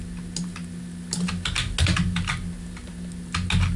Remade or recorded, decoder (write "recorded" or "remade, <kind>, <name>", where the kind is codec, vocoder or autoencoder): recorded